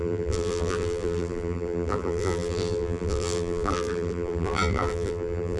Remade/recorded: remade